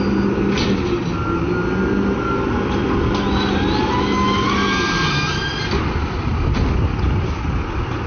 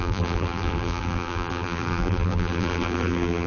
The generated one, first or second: second